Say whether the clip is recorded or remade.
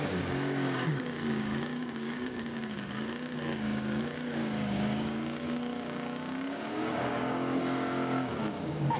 remade